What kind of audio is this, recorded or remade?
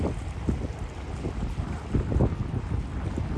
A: recorded